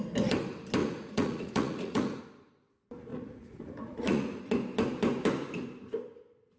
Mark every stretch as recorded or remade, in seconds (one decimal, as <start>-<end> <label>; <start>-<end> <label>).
0.0-0.8 recorded; 0.8-2.2 remade; 2.2-3.1 recorded; 3.1-4.4 remade; 4.4-6.6 recorded